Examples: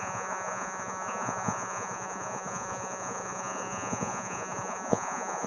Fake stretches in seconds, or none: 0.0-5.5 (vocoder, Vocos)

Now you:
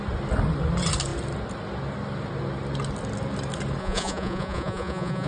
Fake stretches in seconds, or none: 3.8-5.3 (vocoder, Vocos)

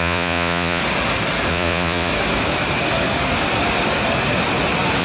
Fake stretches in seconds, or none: 0.0-0.8 (vocoder, Vocos); 1.5-2.1

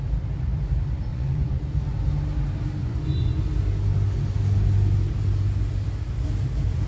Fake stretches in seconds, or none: 1.1-1.6 (vocoder, Vocos); 2.8-3.4

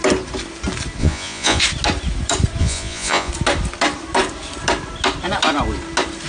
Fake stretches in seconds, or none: 1.0-1.6 (vocoder, Vocos); 2.6-3.3